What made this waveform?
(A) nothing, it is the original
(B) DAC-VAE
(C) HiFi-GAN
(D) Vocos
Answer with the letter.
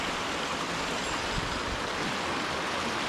A